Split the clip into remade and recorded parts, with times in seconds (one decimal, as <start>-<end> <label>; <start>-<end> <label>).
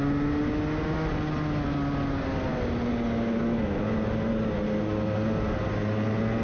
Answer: 0.0-6.4 recorded